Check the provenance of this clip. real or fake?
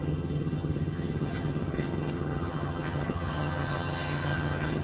fake